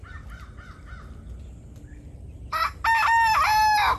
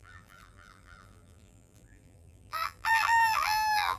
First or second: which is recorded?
first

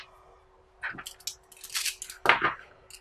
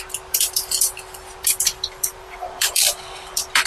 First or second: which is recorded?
first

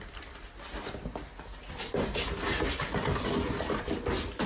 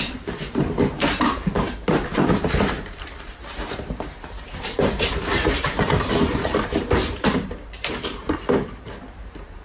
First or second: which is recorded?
first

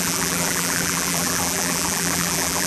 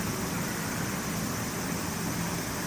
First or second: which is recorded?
second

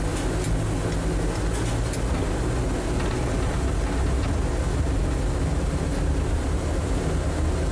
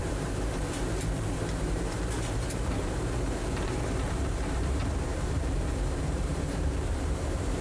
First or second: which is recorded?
first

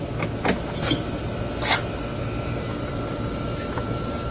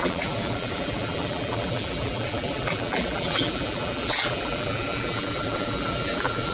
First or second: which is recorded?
first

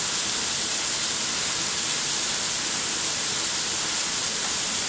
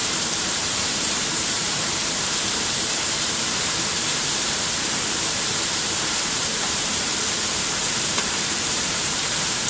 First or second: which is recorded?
first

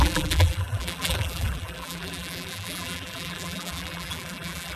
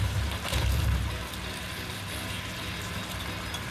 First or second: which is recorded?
second